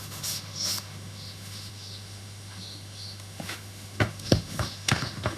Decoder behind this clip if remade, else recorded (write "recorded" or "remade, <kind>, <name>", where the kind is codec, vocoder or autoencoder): remade, autoencoder, DAC-VAE